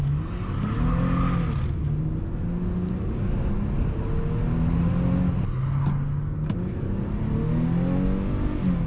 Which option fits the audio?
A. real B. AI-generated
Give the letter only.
A